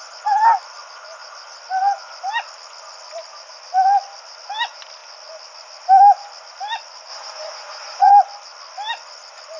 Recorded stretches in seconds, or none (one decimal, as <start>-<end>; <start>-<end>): 0.0-7.1; 8.1-9.6